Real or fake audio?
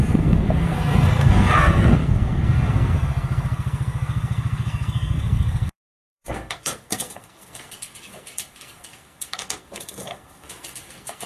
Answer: fake